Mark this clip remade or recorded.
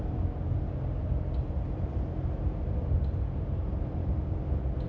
recorded